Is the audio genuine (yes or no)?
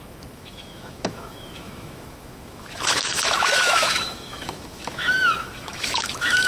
no